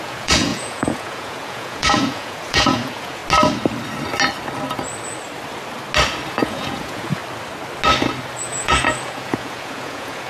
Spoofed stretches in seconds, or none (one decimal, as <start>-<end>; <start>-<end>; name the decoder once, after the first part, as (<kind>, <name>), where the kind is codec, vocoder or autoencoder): 0.0-3.2 (vocoder, Vocos); 6.3-7.2; 8.4-10.3

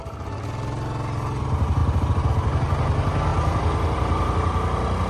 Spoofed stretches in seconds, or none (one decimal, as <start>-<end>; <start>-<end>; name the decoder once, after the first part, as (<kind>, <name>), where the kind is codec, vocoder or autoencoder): none

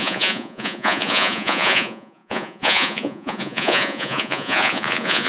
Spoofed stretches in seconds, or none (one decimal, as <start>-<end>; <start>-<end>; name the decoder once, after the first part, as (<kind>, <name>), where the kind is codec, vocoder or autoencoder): 0.0-5.3 (vocoder, Vocos)

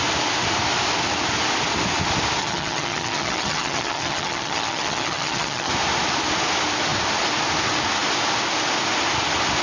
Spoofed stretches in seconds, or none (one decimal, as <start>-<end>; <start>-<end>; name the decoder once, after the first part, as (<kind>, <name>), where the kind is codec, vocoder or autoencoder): 2.4-5.7 (vocoder, HiFi-GAN)

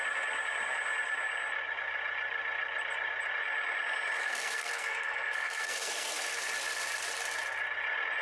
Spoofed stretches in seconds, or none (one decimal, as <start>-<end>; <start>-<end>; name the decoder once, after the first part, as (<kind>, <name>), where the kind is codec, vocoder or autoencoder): 4.3-6.3 (codec, SNAC)